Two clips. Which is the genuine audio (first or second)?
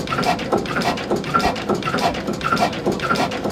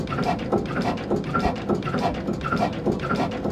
second